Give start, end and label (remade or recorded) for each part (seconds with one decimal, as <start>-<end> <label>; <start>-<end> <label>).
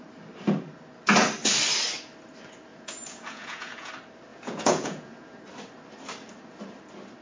0.0-2.7 recorded; 2.7-3.9 remade; 3.9-4.3 recorded; 4.3-5.4 remade; 5.4-7.2 recorded